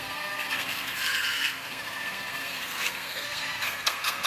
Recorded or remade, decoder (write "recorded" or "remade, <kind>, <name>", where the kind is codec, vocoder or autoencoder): remade, codec, SNAC